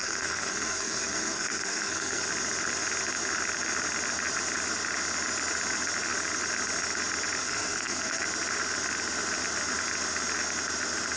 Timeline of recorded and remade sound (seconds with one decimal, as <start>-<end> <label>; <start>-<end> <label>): 0.0-2.2 remade; 2.2-7.4 recorded; 7.4-8.2 remade; 8.2-11.2 recorded